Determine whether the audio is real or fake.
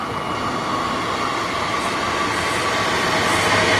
real